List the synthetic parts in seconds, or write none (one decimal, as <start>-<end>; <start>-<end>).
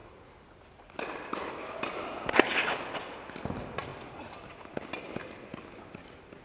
none